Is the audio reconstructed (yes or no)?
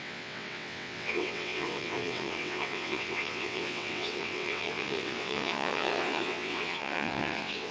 yes